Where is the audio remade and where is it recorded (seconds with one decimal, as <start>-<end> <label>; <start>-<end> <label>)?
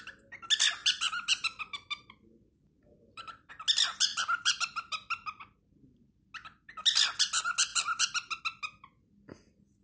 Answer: 0.0-0.8 recorded; 0.8-3.5 remade; 3.5-4.1 recorded; 4.1-6.3 remade; 6.3-7.7 recorded; 7.7-8.4 remade; 8.4-9.8 recorded